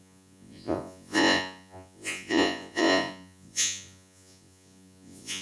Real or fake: fake